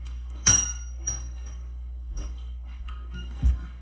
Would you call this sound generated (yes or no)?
yes